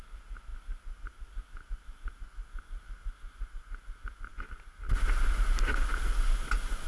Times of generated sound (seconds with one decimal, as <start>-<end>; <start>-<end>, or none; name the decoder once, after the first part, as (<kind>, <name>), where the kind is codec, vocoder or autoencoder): none